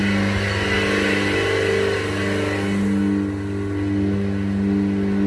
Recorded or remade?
recorded